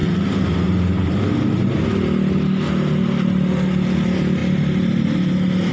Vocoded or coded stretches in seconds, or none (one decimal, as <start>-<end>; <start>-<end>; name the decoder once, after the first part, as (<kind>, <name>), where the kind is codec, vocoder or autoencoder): 0.0-1.3 (vocoder, BigVGAN v2)